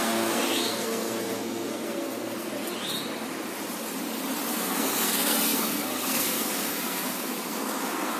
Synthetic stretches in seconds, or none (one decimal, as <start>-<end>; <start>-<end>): 0.0-2.5; 4.5-8.2